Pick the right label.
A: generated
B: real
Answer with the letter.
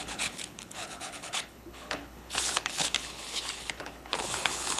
A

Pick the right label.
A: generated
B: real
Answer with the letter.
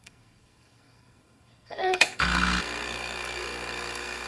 A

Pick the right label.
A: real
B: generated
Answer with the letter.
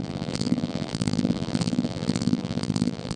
B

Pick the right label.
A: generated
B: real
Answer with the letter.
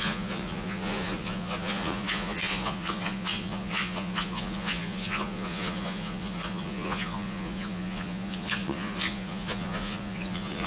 A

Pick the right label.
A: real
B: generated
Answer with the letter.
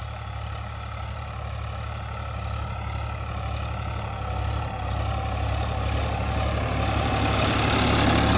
A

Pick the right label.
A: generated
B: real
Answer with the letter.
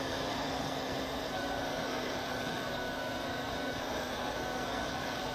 A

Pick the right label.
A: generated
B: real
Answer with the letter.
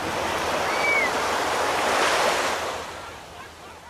B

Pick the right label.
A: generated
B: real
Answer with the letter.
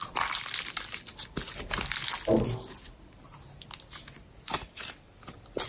B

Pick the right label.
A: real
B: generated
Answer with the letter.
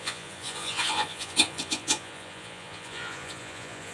B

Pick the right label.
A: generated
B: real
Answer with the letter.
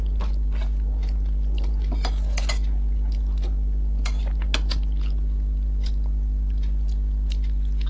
B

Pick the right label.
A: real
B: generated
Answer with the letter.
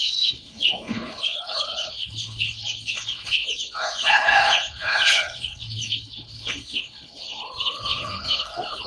B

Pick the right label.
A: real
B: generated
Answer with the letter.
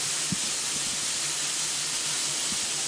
A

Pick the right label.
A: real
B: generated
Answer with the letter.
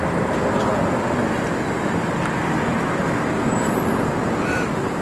A